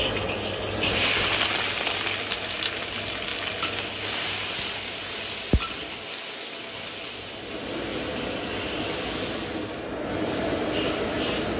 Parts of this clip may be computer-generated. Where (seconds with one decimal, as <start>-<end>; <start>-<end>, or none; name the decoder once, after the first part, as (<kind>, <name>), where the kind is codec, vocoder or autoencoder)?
none